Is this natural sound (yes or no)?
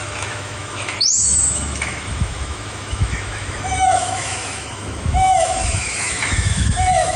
no